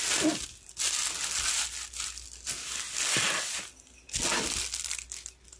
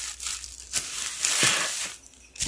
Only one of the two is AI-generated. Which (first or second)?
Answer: second